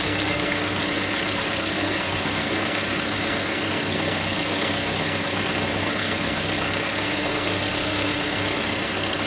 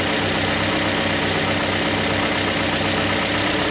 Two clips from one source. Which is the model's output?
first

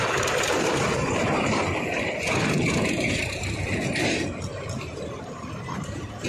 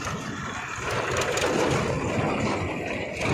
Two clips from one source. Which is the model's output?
first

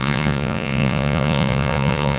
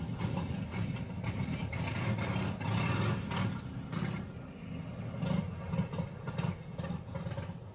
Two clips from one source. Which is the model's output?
first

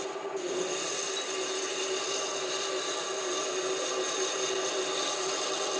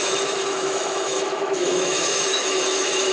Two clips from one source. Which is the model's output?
second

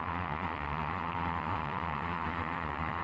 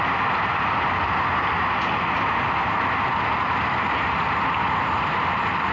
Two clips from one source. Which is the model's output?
first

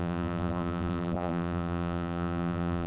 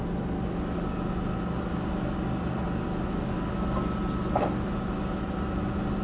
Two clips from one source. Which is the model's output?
first